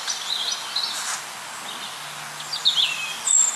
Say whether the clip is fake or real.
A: real